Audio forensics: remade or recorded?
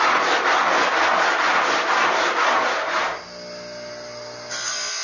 recorded